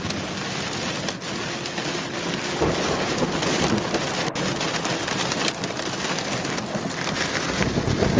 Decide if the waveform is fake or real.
real